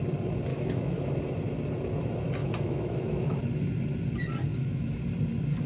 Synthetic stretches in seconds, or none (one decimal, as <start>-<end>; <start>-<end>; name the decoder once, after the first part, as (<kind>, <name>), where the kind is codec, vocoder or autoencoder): 0.5-1.1 (autoencoder, DAC-VAE); 2.4-3.4; 4.5-5.0